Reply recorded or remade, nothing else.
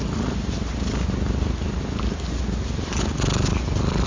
recorded